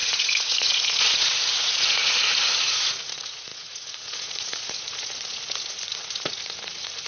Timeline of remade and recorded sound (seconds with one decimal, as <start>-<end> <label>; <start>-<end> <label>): 0.0-7.1 remade